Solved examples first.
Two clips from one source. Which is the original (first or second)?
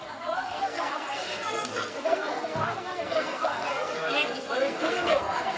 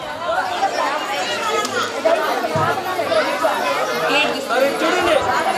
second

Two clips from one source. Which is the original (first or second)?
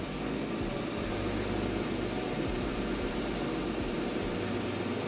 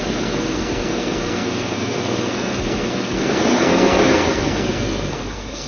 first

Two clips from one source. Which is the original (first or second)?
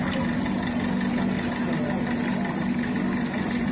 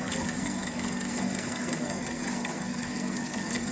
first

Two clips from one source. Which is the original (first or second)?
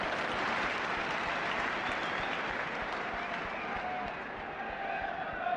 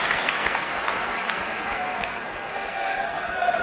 first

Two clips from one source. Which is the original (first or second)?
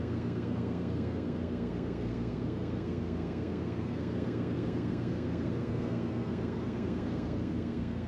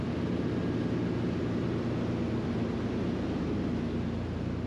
second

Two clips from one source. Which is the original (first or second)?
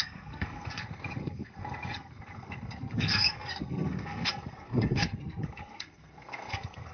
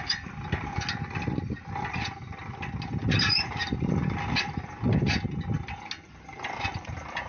second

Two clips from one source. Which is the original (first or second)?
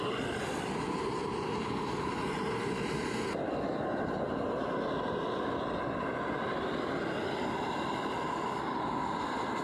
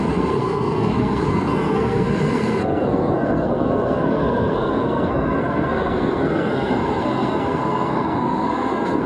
first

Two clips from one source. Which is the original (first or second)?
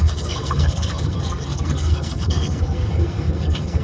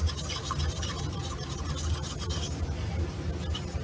second